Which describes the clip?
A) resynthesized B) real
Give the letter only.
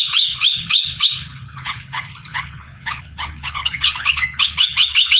A